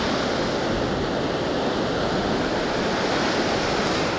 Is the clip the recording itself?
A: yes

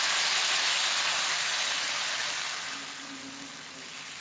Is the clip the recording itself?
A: yes